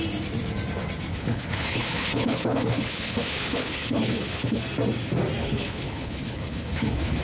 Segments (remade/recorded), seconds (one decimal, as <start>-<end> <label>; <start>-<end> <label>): 0.0-1.1 recorded; 1.1-4.6 remade; 4.6-5.4 recorded; 5.4-7.2 remade